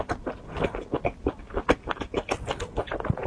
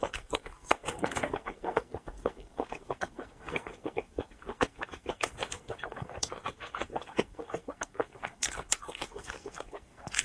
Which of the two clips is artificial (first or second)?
second